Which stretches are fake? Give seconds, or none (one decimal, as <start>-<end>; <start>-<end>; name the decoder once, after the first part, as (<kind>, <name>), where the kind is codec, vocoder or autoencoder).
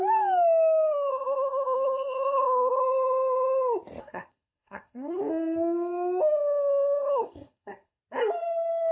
1.1-2.8 (codec, SNAC); 4.0-5.2; 7.0-8.0